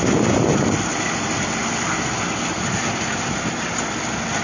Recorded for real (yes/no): yes